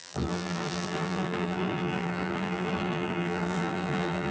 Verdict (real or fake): fake